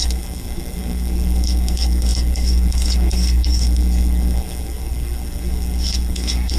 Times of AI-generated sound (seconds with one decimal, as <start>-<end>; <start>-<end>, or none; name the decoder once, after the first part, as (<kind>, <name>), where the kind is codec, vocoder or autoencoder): 0.0-6.6 (codec, SNAC)